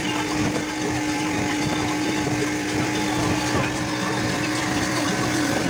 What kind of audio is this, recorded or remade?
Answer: remade